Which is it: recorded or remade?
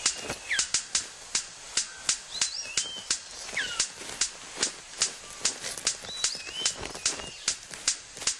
recorded